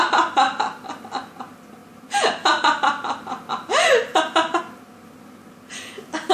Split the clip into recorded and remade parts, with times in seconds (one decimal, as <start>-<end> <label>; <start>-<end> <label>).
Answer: 0.0-6.3 recorded